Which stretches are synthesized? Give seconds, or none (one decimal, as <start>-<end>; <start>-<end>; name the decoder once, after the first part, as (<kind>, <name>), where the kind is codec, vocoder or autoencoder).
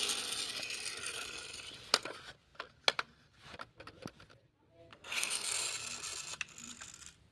4.9-5.5 (codec, SNAC)